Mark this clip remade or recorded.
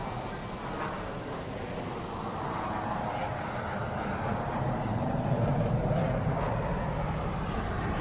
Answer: recorded